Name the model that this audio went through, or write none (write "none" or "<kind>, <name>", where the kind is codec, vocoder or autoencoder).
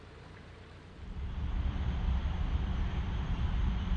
vocoder, BigVGAN v2